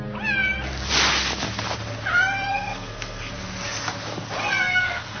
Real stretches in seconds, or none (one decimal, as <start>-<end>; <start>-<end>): 0.0-2.5; 3.3-4.4